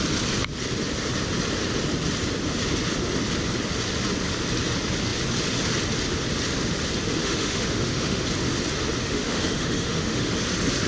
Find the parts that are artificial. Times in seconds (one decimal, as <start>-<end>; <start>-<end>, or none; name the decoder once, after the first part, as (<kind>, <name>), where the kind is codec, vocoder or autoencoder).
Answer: 7.2-8.2 (autoencoder, DAC-VAE); 9.0-10.3